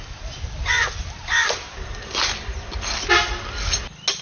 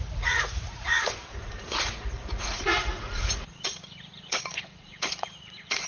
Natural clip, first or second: first